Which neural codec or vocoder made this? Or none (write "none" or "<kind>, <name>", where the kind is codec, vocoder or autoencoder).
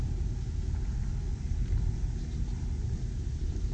none